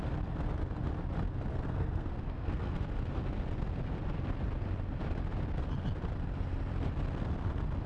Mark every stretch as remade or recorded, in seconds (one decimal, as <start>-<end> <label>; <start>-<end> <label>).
0.0-1.5 recorded; 1.5-2.7 remade; 2.7-7.9 recorded